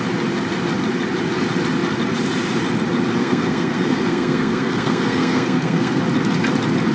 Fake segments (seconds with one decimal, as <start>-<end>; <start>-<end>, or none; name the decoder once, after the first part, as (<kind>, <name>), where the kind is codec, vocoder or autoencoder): 3.2-6.0 (codec, SNAC)